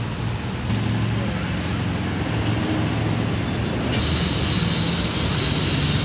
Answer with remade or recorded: recorded